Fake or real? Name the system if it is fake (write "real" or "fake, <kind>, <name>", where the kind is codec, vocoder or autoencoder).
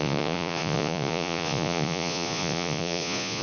fake, vocoder, Vocos